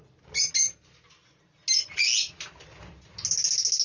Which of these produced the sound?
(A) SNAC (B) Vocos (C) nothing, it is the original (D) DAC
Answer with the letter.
C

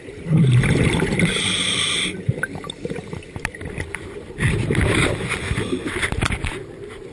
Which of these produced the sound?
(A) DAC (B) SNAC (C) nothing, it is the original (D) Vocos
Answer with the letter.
C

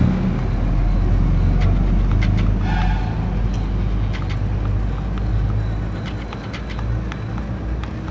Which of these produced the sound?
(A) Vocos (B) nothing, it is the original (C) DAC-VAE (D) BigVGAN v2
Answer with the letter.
B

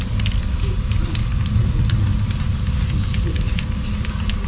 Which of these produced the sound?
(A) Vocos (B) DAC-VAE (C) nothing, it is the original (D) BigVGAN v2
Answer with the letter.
C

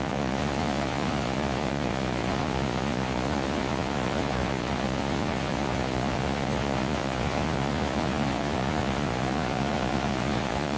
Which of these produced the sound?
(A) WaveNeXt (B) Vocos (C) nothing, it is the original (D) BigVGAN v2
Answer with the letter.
B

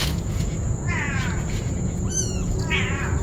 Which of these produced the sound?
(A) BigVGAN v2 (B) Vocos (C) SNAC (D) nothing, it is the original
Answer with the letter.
B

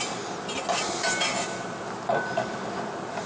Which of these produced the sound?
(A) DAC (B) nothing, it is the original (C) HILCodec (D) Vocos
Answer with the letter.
B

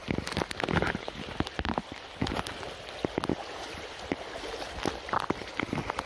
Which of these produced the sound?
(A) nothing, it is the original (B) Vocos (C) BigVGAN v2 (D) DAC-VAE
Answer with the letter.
A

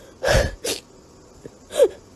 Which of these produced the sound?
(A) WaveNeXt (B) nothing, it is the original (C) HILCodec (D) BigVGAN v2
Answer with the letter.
B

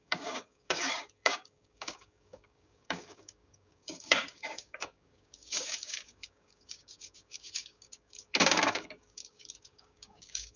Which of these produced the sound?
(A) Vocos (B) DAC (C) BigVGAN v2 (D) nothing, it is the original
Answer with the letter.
B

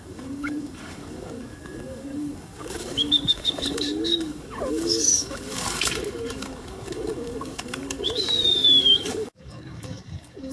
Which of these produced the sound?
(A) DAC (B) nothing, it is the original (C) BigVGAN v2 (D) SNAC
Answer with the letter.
A